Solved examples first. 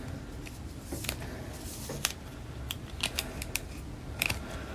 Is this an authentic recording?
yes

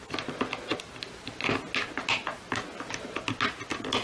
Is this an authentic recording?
yes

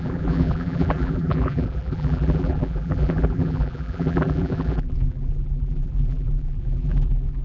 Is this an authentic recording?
no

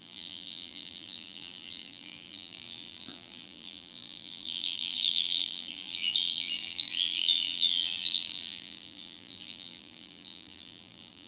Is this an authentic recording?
no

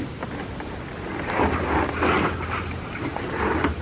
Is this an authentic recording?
yes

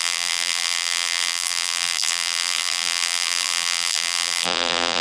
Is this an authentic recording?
no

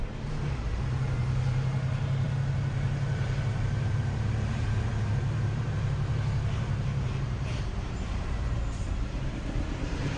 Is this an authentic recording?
no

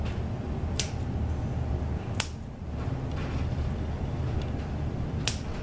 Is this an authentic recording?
yes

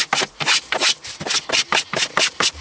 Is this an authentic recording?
yes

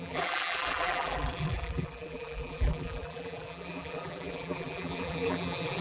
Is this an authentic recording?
no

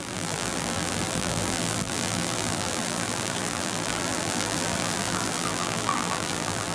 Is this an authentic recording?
no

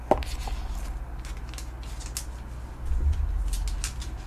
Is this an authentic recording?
yes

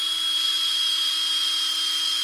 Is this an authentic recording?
no